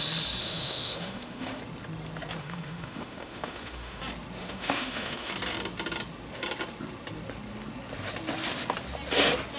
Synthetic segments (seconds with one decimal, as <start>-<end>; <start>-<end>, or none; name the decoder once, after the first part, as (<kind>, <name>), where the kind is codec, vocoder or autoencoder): 0.4-1.6 (autoencoder, DAC-VAE); 2.4-4.0; 4.4-5.3